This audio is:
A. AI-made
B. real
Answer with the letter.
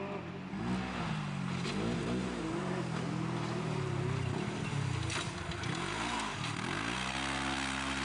B